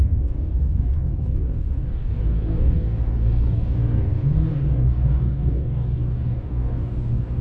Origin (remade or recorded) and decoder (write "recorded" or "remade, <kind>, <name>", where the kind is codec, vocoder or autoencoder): remade, codec, DAC